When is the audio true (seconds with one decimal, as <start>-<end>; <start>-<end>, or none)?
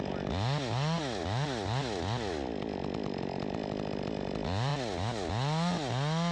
0.0-6.3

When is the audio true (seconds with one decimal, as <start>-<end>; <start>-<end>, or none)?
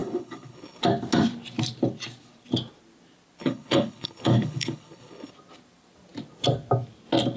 0.8-3.4; 5.3-7.4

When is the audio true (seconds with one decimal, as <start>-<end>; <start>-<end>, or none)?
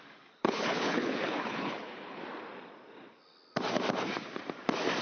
0.0-0.4; 2.2-5.0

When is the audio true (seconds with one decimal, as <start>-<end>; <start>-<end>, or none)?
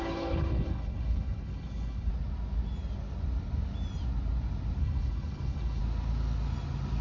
2.1-4.8; 5.8-7.0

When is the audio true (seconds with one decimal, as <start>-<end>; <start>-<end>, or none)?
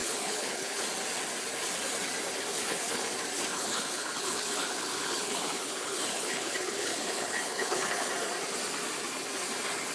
0.8-2.5; 3.1-3.5; 8.1-9.9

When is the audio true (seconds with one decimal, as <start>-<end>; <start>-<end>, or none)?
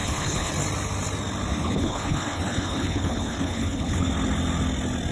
0.5-1.5; 4.1-5.1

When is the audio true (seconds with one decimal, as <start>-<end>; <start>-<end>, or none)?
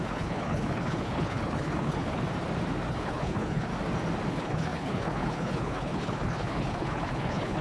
2.2-2.9; 3.7-4.3